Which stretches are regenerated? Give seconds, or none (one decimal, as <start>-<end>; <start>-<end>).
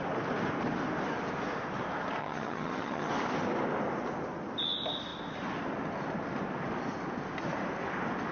2.2-3.1